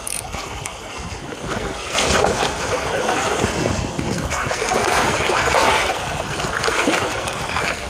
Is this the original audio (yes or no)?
no